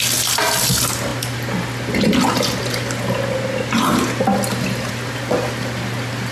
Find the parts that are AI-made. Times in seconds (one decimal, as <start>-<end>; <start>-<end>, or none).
none